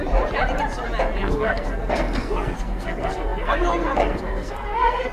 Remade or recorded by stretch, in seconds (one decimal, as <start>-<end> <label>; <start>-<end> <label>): 0.0-1.2 recorded; 1.2-5.1 remade